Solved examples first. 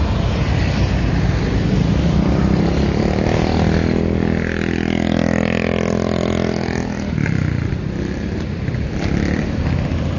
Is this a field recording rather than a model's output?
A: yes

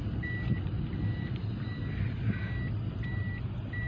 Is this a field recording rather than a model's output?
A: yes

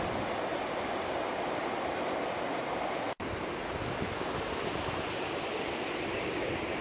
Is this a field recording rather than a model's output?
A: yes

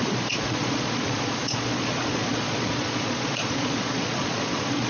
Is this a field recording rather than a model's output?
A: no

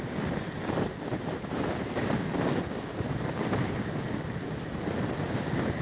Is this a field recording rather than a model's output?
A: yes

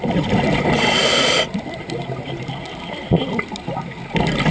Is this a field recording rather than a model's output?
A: yes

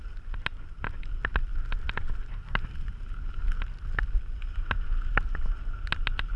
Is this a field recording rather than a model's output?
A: yes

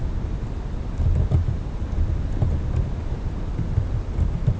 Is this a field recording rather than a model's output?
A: yes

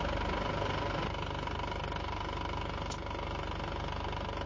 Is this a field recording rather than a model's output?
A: yes